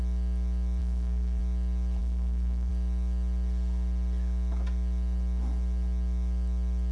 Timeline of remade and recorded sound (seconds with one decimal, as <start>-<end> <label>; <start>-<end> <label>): 0.0-0.8 recorded; 0.8-1.4 remade; 1.4-2.0 recorded; 2.0-2.7 remade; 2.7-6.9 recorded